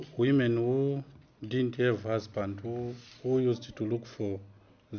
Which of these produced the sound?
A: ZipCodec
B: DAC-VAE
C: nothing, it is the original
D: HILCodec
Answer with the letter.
C